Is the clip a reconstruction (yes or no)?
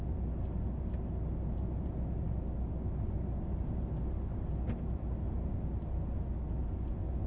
no